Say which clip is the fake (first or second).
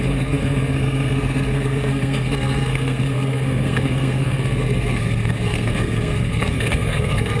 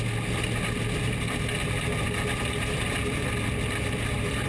first